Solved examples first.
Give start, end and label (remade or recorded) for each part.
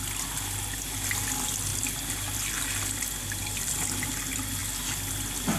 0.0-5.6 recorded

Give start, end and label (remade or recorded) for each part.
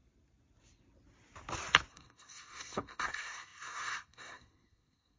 0.0-1.9 recorded; 1.9-5.2 remade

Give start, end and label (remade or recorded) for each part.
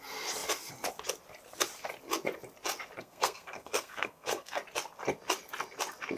0.0-3.0 recorded; 3.0-4.6 remade; 4.6-6.2 recorded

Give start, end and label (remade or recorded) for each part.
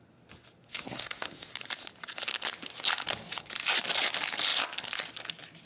0.0-0.6 recorded; 0.6-1.5 remade; 1.5-5.7 recorded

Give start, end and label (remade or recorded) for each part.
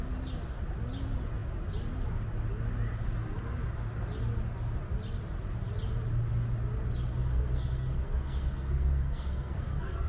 0.0-7.3 recorded; 7.3-10.1 remade